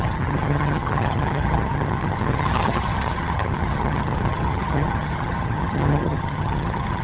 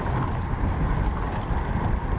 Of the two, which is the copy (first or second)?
first